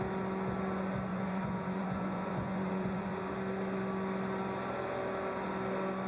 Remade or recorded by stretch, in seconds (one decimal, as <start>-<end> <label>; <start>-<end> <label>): 0.0-1.1 recorded; 1.1-3.3 remade; 3.3-6.1 recorded